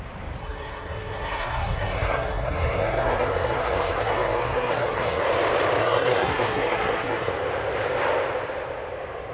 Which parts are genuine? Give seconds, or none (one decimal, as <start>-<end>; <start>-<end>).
0.0-0.4; 5.2-5.8; 7.3-9.3